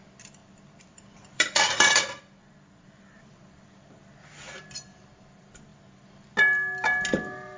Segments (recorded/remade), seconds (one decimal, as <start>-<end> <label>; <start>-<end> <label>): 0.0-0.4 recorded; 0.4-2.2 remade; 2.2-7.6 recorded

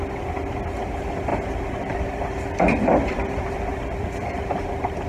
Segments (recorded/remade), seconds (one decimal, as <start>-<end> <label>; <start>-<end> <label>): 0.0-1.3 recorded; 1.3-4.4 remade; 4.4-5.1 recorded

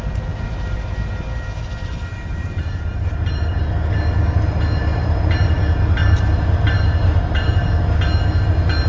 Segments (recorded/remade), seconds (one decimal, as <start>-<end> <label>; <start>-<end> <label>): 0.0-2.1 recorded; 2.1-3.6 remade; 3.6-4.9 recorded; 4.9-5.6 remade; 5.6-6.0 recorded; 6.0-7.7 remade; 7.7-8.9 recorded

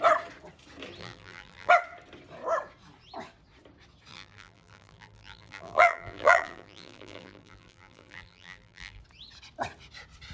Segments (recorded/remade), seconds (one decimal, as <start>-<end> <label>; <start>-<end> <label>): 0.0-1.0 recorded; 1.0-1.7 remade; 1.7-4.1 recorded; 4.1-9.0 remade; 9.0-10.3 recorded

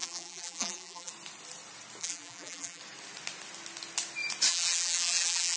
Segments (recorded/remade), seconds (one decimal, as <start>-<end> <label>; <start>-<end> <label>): 0.0-1.1 remade; 1.1-2.0 recorded; 2.0-2.8 remade; 2.8-4.5 recorded; 4.5-5.6 remade